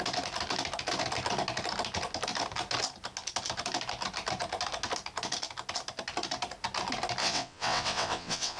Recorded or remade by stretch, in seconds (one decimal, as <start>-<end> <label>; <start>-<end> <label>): 0.0-7.2 recorded; 7.2-8.6 remade